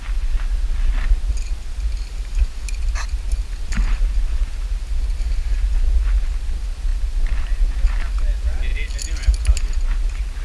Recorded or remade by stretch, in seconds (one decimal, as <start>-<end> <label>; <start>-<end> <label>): 0.0-10.4 recorded